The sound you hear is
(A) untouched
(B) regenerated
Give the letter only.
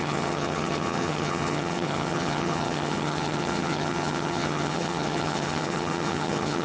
B